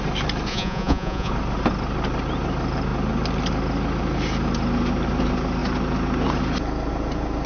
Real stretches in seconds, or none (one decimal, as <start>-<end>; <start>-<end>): 0.0-0.5; 1.3-7.5